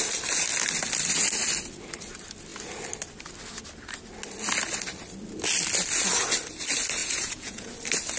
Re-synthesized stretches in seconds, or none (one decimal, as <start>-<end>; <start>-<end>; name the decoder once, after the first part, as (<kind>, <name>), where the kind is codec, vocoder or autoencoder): 7.0-7.7 (vocoder, Vocos)